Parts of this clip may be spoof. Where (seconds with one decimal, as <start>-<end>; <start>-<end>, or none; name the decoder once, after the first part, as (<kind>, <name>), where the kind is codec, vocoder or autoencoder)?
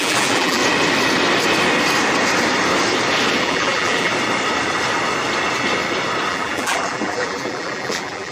0.0-0.6 (vocoder, BigVGAN v2); 3.4-4.1; 6.3-8.3